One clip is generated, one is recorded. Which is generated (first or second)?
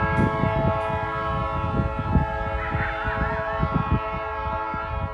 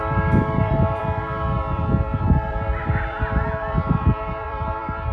second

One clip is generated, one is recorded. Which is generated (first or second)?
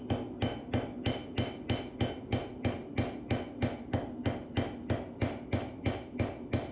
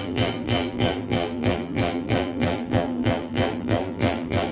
second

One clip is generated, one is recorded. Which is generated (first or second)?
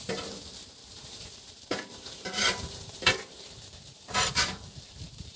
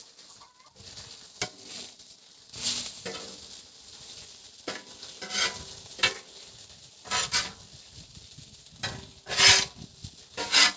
first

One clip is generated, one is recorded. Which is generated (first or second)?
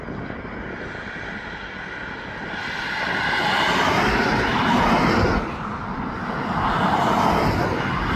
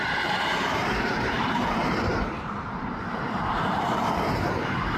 second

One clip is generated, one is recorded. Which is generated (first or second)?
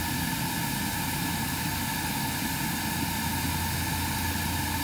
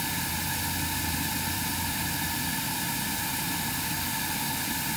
second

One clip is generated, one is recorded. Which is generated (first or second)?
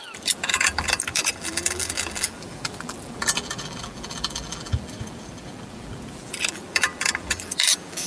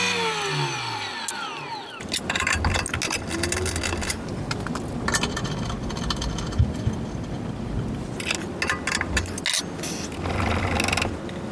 first